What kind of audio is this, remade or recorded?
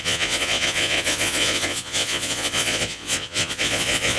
remade